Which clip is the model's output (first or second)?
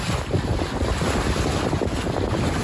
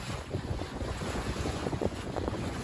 second